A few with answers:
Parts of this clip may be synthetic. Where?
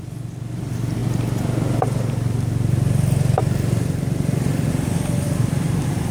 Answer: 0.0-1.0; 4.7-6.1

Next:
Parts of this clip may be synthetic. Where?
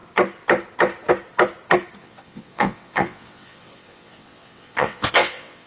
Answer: 2.0-5.7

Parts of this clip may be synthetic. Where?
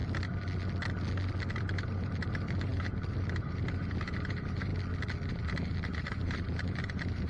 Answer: 1.6-4.7; 5.3-7.3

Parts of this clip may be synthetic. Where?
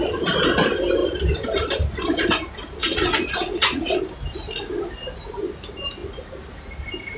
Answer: 2.8-4.0